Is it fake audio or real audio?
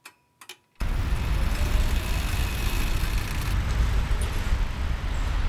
real